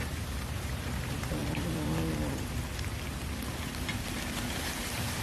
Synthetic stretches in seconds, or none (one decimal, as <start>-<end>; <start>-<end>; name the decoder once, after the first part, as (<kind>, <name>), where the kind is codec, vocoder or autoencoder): 0.0-1.4 (vocoder, BigVGAN v2); 4.5-5.2